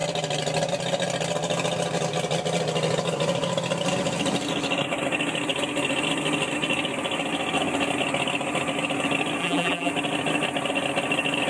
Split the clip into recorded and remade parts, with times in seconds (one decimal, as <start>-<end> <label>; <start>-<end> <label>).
0.0-9.4 recorded; 9.4-9.9 remade; 9.9-11.5 recorded